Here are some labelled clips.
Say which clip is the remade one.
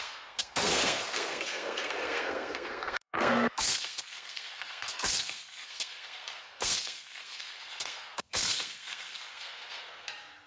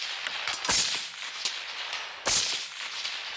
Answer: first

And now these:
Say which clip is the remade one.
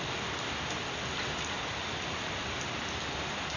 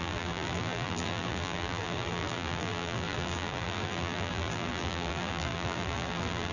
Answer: second